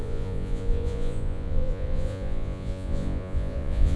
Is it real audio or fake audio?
fake